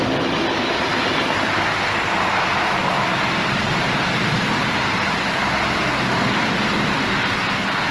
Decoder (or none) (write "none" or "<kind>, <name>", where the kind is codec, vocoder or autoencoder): none